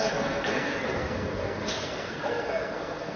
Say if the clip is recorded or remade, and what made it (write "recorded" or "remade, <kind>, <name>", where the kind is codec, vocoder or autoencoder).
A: remade, codec, SNAC